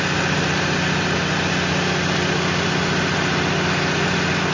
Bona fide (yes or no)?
yes